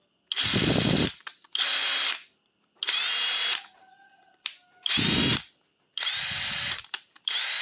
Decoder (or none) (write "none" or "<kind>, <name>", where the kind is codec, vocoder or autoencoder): none